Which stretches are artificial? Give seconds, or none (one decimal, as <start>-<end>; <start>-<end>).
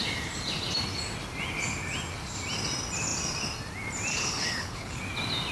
4.1-5.0